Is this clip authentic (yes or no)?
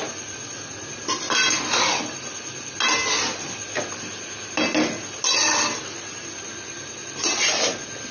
yes